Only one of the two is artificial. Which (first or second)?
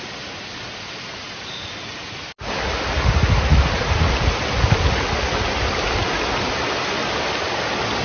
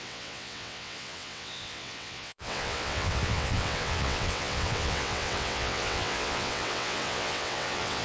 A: second